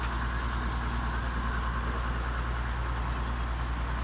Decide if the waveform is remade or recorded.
recorded